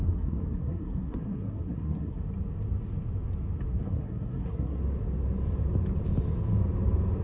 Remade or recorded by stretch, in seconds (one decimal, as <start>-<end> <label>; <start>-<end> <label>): 0.0-2.2 remade; 2.2-3.7 recorded; 3.7-4.8 remade; 4.8-7.2 recorded